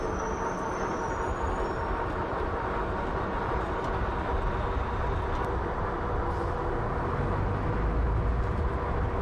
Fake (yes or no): no